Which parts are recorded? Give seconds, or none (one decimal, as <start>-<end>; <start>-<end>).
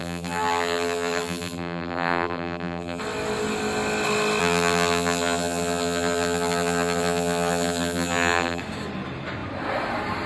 3.0-4.4; 8.6-10.3